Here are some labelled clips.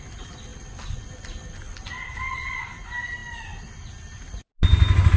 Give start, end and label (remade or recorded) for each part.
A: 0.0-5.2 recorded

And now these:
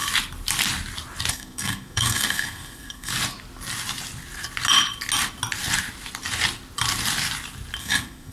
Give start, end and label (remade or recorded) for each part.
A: 0.0-1.3 recorded; 1.3-3.1 remade; 3.1-7.8 recorded; 7.8-8.3 remade

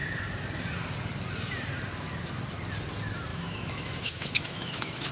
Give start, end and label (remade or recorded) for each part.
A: 0.0-3.3 recorded; 3.3-5.1 remade

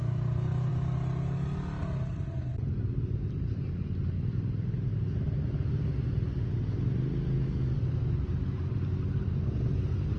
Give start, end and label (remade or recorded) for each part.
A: 0.0-10.2 recorded